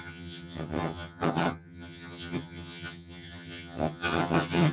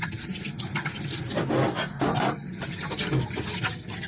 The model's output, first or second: first